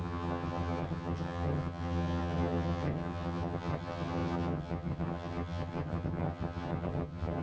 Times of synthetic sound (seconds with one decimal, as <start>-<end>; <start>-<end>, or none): 0.0-7.4